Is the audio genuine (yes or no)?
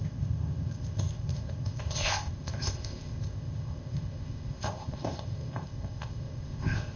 no